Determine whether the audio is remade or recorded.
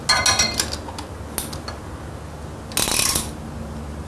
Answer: recorded